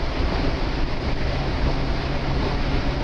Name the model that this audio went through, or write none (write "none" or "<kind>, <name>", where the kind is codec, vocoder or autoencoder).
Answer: none